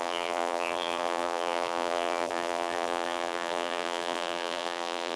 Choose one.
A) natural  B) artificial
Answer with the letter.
B